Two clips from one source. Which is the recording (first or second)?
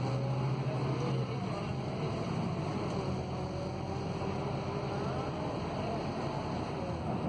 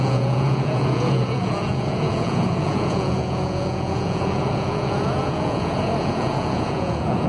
first